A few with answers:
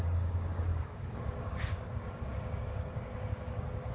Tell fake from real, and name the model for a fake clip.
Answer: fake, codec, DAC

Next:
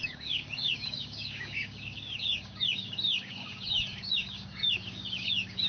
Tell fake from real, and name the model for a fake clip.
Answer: fake, codec, DAC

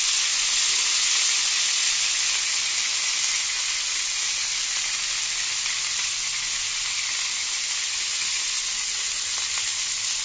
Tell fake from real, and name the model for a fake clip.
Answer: real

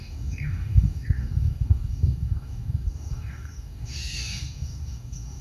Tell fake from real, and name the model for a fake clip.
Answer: fake, codec, DAC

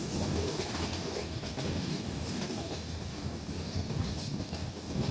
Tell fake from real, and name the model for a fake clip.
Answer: fake, codec, DAC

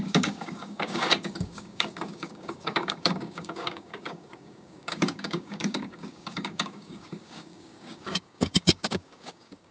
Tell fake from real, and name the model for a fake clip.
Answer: fake, codec, DAC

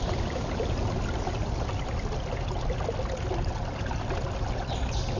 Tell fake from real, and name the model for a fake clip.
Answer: real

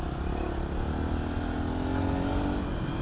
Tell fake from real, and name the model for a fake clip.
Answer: real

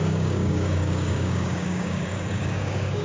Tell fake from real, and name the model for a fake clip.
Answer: fake, codec, DAC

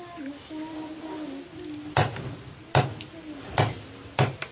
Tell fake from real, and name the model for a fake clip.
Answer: real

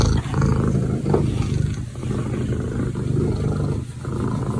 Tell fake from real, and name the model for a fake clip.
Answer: real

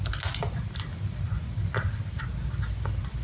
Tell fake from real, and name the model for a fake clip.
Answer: real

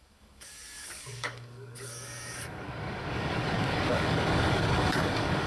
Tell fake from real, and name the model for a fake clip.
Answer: fake, codec, DAC